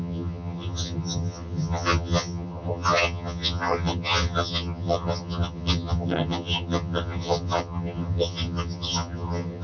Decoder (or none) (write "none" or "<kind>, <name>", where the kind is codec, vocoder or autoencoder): vocoder, HiFi-GAN